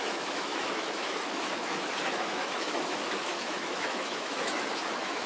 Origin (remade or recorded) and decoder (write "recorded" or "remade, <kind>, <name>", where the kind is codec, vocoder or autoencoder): remade, autoencoder, DAC-VAE